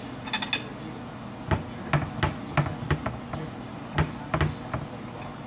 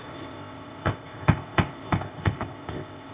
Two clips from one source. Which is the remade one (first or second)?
second